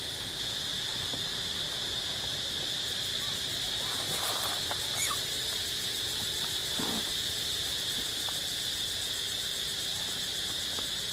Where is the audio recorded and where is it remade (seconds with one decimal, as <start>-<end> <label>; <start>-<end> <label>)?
0.0-1.3 recorded; 1.3-3.6 remade; 3.6-6.6 recorded; 6.6-7.8 remade; 7.8-9.9 recorded; 9.9-10.6 remade; 10.6-11.1 recorded